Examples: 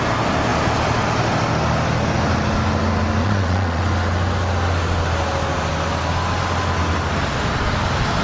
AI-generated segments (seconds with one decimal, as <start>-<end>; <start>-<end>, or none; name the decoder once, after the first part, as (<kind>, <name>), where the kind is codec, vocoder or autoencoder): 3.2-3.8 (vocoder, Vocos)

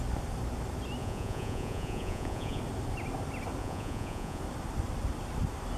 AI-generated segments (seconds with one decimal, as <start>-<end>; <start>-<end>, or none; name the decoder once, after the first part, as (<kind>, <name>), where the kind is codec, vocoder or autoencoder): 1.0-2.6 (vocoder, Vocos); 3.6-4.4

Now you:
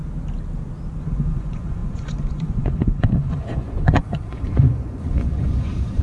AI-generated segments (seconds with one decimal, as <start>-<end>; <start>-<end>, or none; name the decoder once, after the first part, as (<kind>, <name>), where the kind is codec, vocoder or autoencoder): 1.0-6.0 (vocoder, Vocos)

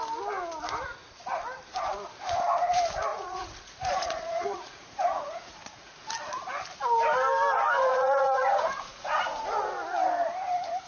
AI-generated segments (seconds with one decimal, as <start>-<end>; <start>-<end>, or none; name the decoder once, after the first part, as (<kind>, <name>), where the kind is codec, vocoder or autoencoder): 3.1-6.0 (vocoder, Vocos); 7.9-9.2